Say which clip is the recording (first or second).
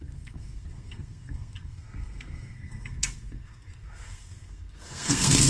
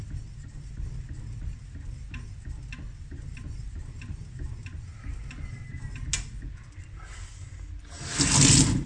second